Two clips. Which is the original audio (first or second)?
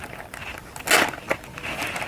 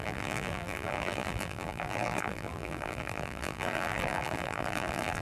first